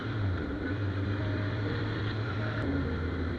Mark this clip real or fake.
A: fake